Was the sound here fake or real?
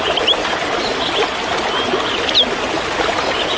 real